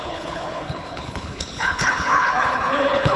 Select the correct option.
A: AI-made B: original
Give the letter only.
A